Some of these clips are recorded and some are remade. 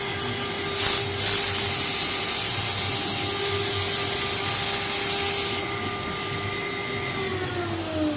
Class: recorded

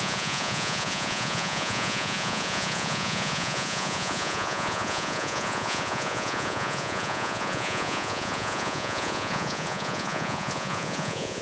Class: remade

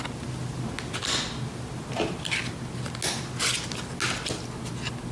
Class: recorded